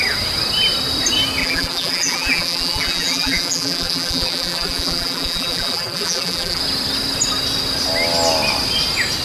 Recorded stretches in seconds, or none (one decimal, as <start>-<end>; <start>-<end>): 0.0-1.4; 6.6-9.2

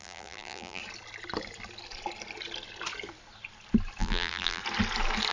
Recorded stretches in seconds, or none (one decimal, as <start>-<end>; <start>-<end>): 0.8-4.0; 4.6-5.3

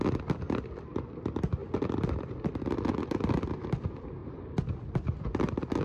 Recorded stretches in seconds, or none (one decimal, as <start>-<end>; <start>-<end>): 0.0-5.8

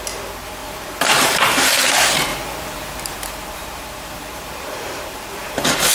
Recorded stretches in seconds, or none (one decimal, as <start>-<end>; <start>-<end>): 0.0-0.6; 1.8-2.3